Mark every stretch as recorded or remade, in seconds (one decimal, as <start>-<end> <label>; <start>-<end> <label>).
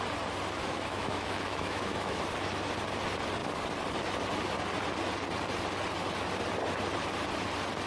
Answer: 0.0-0.6 recorded; 0.6-2.2 remade; 2.2-7.9 recorded